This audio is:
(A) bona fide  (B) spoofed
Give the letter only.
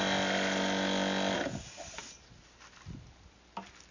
A